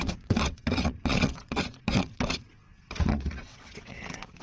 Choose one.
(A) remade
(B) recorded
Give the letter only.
A